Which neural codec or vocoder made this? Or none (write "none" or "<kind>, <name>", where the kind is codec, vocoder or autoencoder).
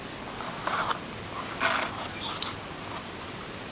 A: none